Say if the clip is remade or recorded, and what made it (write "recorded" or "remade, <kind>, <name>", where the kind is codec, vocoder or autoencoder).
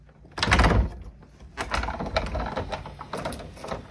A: recorded